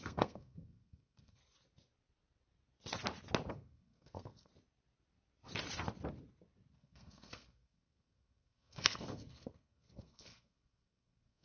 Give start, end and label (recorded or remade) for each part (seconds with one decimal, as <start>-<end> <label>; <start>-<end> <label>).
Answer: 0.0-1.4 remade; 1.4-3.5 recorded; 3.5-4.5 remade; 4.5-6.7 recorded; 6.7-11.4 remade